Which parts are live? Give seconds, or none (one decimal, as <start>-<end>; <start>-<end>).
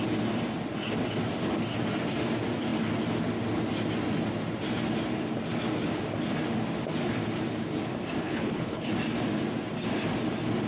0.0-8.2; 8.9-10.7